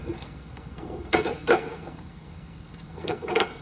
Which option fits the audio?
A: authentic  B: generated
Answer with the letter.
B